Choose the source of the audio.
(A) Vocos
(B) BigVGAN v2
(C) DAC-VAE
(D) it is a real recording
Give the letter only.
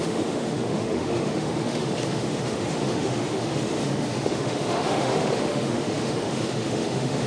C